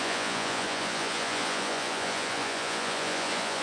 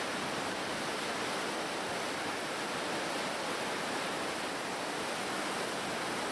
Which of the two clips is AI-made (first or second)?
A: first